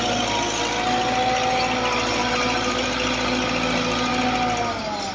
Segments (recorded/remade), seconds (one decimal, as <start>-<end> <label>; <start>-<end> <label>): 0.0-5.1 recorded